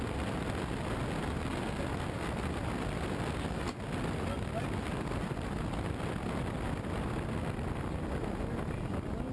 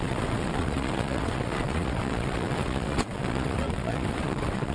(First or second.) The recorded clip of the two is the first